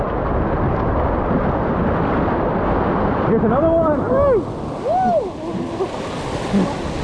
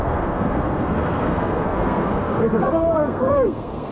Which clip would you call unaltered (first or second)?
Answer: first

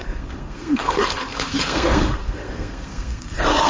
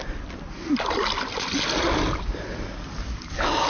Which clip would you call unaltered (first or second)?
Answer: second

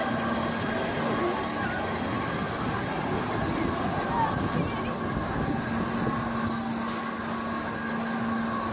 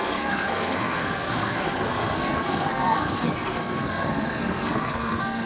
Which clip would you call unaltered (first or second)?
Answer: first